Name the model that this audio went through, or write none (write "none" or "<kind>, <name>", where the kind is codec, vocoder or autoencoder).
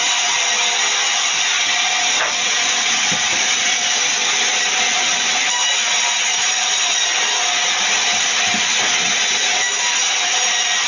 none